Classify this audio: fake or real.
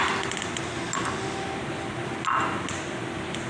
real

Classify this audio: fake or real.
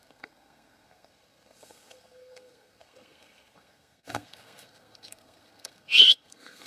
fake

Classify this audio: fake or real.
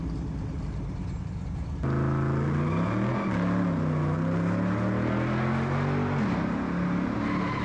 real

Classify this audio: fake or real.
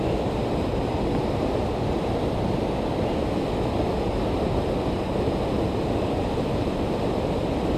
real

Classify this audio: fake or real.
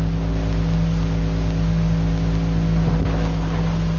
real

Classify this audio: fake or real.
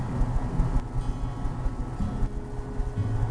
real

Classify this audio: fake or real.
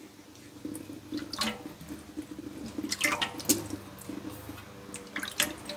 real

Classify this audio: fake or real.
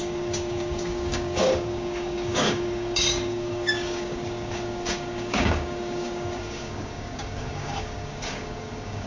fake